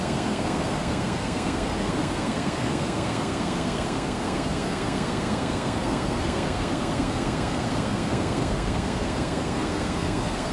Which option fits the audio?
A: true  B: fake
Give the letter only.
B